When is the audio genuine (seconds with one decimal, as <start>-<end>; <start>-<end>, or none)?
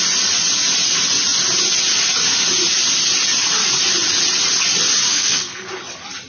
0.0-5.1; 5.7-6.3